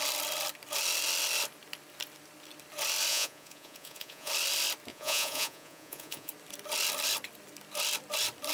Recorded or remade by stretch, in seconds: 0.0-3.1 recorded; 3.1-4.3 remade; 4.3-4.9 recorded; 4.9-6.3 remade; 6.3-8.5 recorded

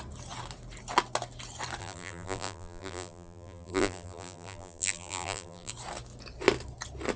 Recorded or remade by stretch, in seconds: 0.0-1.8 recorded; 1.8-5.7 remade; 5.7-7.2 recorded

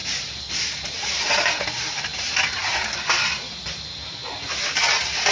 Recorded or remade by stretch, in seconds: 0.0-1.6 remade; 1.6-5.3 recorded